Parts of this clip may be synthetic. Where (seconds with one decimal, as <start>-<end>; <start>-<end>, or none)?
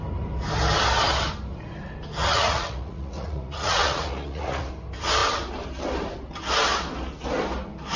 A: 2.2-4.7